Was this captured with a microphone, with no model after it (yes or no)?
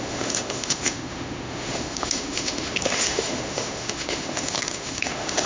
no